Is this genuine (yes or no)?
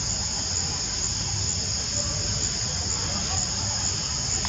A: yes